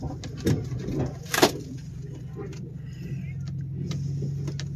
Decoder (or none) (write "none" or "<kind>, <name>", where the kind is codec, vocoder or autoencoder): none